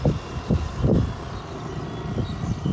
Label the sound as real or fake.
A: real